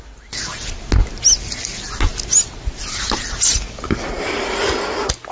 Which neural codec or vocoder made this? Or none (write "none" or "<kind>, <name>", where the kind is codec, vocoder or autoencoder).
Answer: none